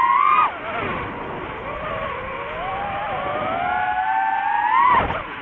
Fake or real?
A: real